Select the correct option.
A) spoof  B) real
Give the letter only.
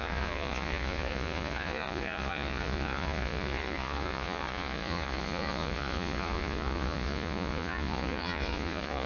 A